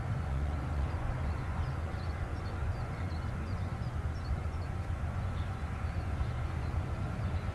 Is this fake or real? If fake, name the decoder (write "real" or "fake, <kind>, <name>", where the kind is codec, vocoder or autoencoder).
fake, vocoder, Vocos